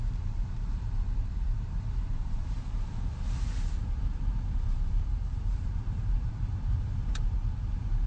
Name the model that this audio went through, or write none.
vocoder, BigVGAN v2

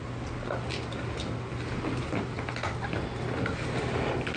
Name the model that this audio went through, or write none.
none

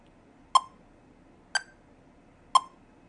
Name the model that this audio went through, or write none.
none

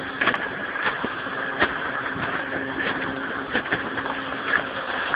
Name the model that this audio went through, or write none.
vocoder, BigVGAN v2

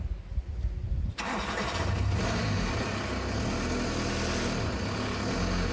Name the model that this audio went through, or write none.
none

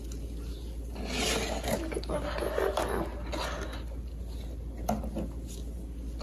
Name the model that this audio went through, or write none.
none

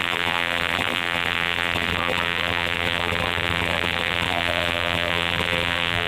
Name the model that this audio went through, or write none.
vocoder, BigVGAN v2